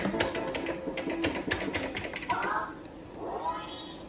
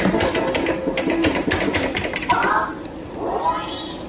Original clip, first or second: first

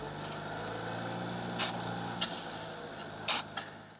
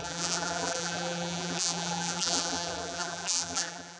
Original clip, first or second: first